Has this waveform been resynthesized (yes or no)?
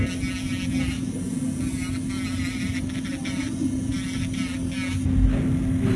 no